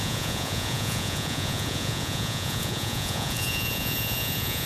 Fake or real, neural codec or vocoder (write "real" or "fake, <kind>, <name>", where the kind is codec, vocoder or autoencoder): fake, vocoder, Vocos